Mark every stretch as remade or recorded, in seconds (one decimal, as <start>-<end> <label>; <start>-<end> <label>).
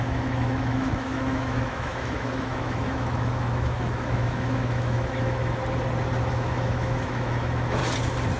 0.0-5.6 remade; 5.6-6.3 recorded; 6.3-7.8 remade; 7.8-8.4 recorded